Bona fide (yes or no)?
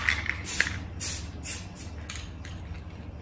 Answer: yes